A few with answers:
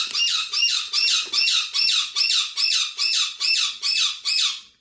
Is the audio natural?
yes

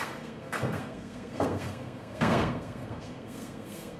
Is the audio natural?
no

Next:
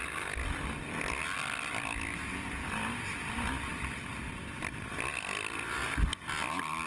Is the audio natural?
yes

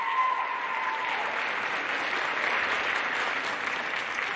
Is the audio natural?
yes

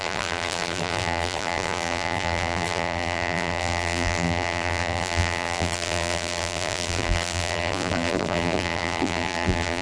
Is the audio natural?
no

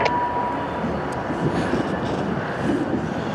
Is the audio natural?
yes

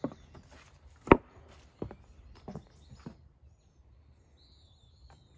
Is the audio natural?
yes